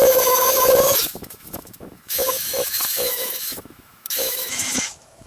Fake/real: fake